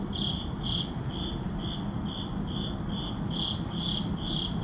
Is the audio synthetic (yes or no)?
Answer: no